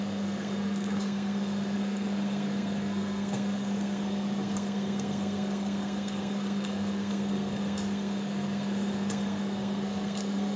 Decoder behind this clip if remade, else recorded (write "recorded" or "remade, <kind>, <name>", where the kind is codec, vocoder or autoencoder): remade, codec, SNAC